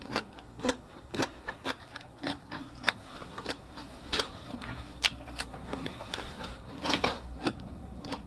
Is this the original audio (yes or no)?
no